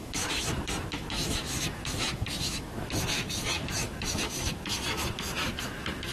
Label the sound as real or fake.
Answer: fake